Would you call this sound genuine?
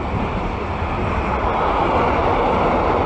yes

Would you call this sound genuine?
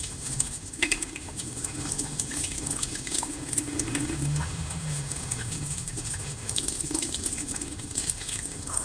no